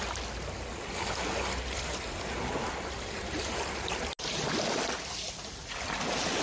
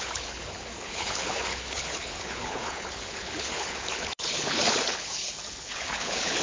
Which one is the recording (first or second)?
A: first